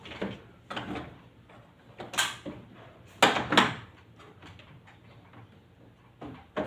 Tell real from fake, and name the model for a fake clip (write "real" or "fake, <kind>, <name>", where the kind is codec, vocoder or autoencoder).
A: real